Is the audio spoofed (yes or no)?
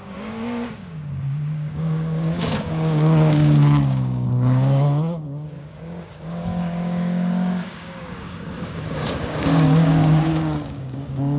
yes